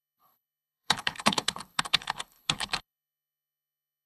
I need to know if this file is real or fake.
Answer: fake